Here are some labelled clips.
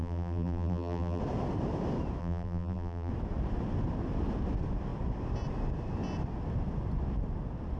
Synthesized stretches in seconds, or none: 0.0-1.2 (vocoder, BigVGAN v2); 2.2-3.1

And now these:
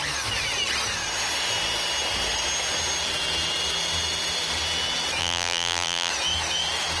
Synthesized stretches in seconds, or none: 5.2-6.1 (vocoder, BigVGAN v2)